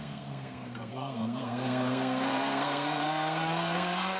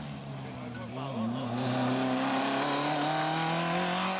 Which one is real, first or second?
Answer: second